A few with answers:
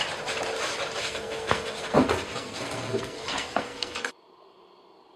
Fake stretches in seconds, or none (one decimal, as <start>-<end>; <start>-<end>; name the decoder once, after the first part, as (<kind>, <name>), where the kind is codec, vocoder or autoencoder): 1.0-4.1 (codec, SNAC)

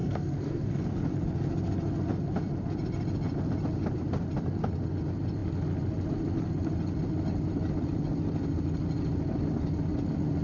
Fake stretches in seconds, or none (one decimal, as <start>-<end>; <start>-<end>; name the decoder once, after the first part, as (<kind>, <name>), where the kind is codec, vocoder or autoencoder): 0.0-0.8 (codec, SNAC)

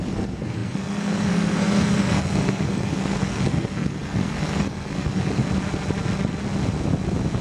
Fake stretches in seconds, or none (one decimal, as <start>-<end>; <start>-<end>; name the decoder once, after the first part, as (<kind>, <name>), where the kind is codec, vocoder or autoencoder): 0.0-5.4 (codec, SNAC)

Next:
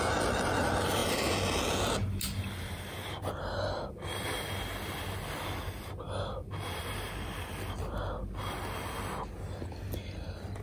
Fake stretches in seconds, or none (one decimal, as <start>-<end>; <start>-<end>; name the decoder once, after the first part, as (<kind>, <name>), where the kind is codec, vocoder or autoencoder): none